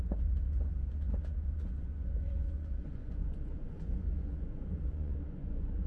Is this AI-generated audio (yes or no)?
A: yes